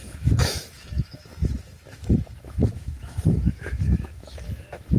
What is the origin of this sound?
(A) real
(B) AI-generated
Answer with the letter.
B